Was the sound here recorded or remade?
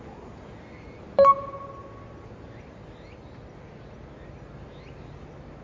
recorded